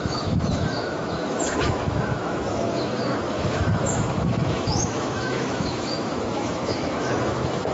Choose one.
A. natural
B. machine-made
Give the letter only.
B